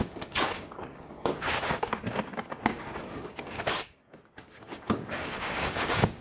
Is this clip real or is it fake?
fake